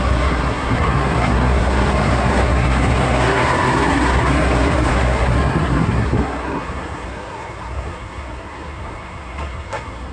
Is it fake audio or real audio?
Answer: fake